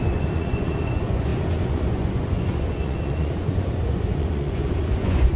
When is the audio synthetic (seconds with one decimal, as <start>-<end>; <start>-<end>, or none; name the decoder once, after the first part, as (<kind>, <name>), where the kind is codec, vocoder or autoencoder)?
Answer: 0.0-5.4 (vocoder, Vocos)